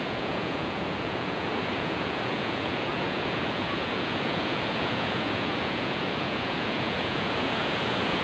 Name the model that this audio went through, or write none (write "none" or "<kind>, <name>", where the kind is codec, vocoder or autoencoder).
vocoder, Vocos